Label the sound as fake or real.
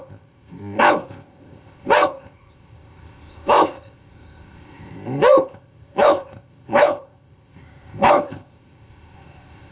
fake